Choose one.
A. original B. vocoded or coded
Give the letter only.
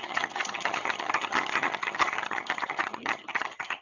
B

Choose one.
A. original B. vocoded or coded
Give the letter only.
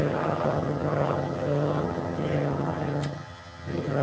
B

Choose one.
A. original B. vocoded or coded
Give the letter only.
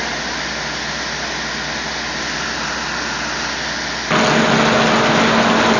A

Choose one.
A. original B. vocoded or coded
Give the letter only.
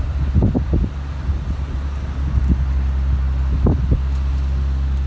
A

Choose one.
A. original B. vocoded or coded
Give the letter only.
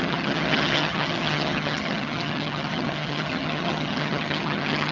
B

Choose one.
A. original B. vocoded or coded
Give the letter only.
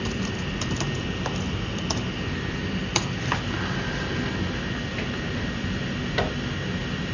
A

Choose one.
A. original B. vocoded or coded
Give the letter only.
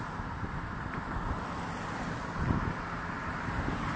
A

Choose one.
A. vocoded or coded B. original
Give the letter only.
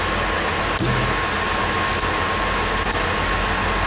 B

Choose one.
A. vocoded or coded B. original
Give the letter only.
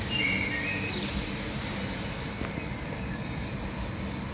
B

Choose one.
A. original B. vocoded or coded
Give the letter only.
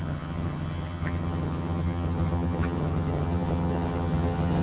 B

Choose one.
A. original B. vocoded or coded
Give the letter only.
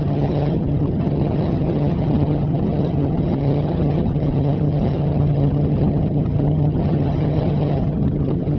B